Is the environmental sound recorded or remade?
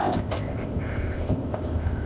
remade